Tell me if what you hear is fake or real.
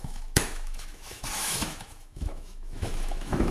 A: fake